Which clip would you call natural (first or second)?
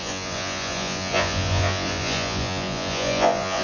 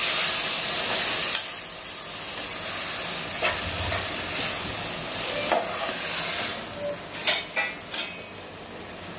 second